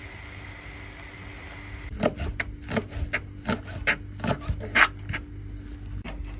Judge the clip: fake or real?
real